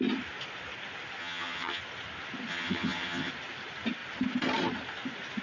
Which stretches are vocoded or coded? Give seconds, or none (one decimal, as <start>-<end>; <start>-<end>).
1.2-1.8; 2.5-3.3